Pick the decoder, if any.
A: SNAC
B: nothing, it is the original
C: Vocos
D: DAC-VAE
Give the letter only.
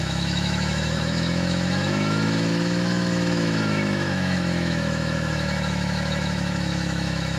D